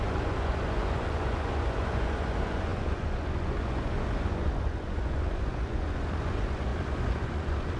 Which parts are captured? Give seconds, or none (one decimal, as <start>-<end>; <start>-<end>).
none